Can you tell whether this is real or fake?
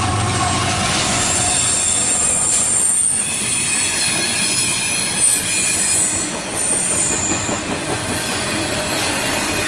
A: fake